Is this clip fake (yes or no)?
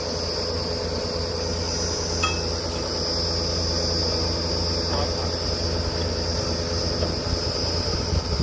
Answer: no